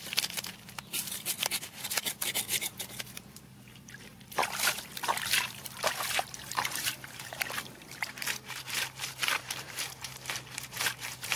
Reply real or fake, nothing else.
fake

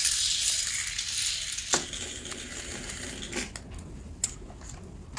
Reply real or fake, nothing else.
real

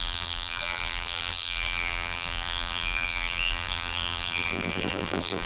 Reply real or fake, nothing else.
fake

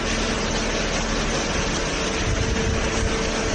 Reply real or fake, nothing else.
real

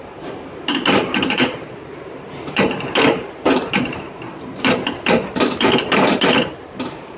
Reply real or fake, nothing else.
fake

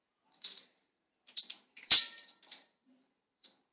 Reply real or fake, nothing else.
fake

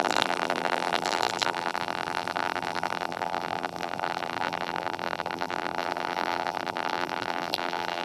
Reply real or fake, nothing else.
fake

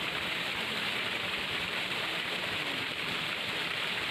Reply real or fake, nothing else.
fake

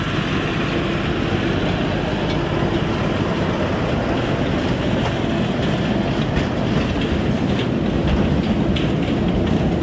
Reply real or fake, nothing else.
real